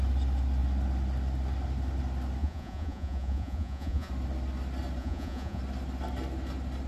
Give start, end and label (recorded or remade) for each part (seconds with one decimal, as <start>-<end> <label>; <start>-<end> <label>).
0.0-2.4 recorded; 2.4-4.1 remade; 4.1-5.0 recorded; 5.0-5.6 remade; 5.6-6.9 recorded